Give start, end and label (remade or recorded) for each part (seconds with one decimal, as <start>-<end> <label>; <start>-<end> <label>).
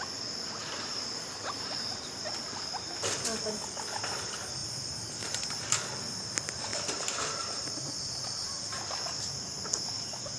0.0-0.6 recorded; 0.6-2.9 remade; 2.9-4.6 recorded; 4.6-5.6 remade; 5.6-6.7 recorded; 6.7-8.6 remade; 8.6-10.4 recorded